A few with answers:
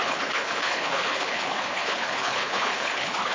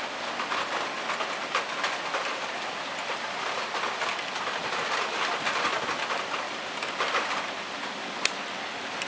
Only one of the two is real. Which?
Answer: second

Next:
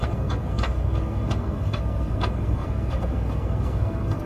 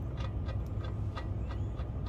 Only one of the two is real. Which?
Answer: second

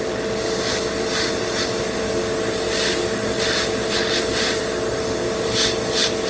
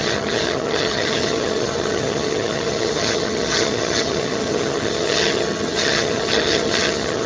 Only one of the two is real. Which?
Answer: first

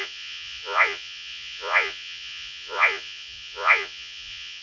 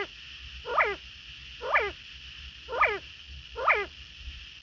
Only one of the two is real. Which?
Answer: second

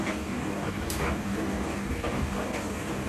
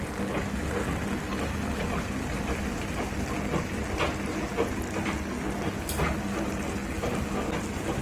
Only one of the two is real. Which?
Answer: second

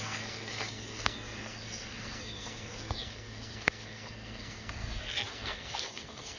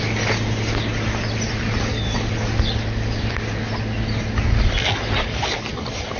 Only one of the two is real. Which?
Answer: second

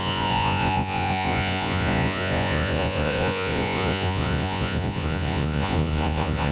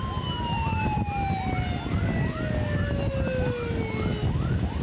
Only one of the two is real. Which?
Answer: second